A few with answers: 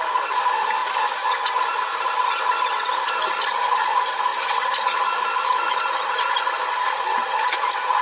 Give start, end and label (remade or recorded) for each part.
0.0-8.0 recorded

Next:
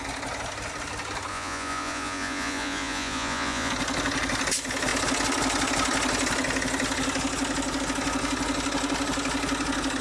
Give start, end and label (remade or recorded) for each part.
0.0-1.3 recorded; 1.3-3.7 remade; 3.7-10.0 recorded

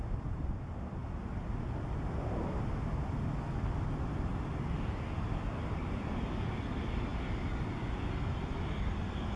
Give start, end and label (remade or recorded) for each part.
0.0-9.4 recorded

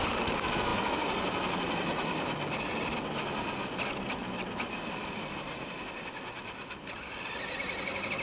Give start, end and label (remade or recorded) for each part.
0.0-8.2 recorded

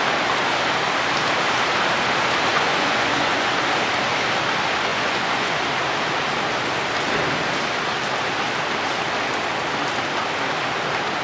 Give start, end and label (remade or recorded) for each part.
0.0-2.5 recorded; 2.5-3.5 remade; 3.5-4.9 recorded; 4.9-5.6 remade; 5.6-11.2 recorded

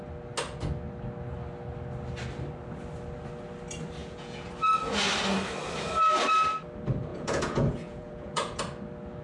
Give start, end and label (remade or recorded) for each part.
0.0-4.0 recorded; 4.0-4.5 remade; 4.5-7.1 recorded; 7.1-8.6 remade; 8.6-9.2 recorded